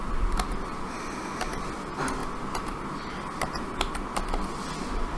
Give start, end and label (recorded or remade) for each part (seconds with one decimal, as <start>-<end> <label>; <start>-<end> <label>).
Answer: 0.0-5.2 recorded